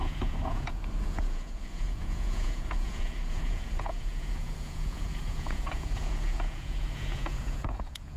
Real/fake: fake